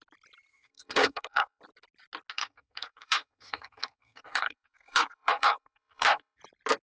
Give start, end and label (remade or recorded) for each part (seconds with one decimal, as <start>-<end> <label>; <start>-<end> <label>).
0.0-0.5 recorded; 0.5-1.6 remade; 1.6-2.3 recorded; 2.3-6.4 remade; 6.4-6.9 recorded